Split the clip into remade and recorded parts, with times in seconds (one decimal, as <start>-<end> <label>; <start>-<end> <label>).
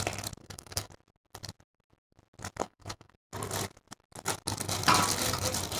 0.0-0.4 recorded; 0.4-0.9 remade; 0.9-2.6 recorded; 2.6-3.1 remade; 3.1-5.8 recorded